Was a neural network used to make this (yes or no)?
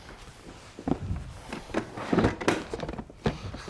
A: no